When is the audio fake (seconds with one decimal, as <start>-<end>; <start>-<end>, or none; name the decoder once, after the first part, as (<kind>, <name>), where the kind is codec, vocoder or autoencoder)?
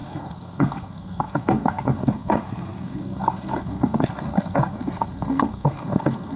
0.0-6.4 (codec, SNAC)